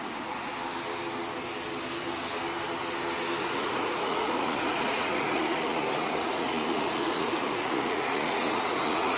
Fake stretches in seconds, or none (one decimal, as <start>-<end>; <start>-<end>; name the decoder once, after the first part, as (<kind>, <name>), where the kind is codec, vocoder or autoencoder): 0.0-0.5 (vocoder, Vocos); 3.4-9.2